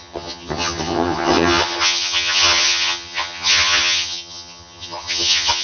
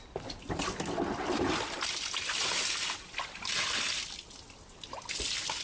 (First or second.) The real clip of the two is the second